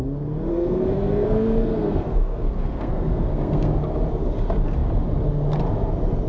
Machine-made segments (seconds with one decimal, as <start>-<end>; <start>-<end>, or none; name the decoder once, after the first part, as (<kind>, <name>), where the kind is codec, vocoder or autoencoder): 0.5-3.8 (codec, SNAC)